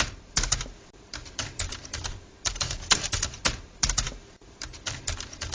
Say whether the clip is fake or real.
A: fake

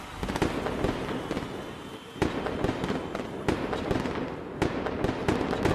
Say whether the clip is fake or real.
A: real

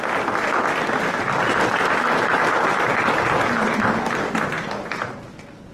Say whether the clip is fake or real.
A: real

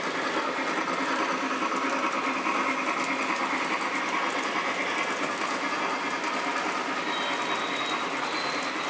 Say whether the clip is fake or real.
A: real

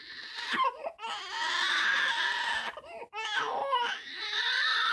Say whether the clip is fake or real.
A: real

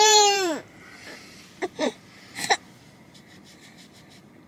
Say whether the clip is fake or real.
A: fake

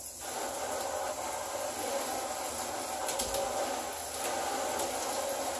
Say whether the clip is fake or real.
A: real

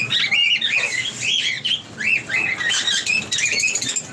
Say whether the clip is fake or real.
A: real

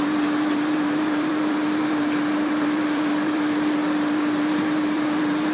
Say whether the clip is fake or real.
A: fake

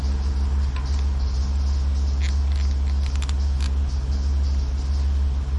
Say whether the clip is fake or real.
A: real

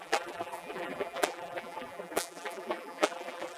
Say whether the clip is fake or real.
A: fake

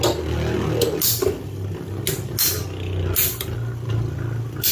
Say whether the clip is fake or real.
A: real